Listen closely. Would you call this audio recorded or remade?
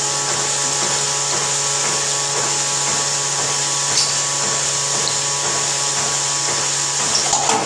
recorded